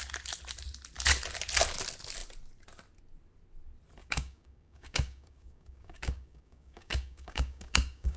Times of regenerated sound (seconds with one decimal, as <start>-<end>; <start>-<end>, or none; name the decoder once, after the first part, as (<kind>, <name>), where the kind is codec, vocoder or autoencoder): 4.0-8.2 (codec, DAC)